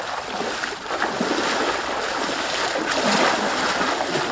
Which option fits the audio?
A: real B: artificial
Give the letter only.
A